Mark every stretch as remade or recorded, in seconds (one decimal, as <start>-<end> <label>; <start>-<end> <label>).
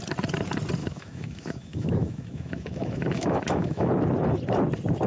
0.0-0.8 recorded; 0.8-3.9 remade; 3.9-5.1 recorded